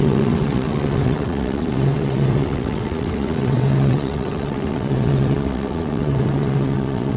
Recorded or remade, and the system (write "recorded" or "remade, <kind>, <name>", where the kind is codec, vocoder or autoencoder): remade, vocoder, WaveNeXt